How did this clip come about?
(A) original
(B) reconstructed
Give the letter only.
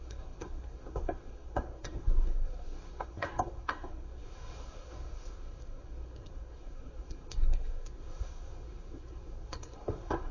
B